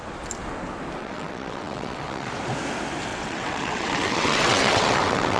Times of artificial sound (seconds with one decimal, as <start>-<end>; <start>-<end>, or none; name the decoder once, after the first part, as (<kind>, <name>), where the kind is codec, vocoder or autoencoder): 1.0-2.3 (vocoder, WaveNeXt); 3.1-5.4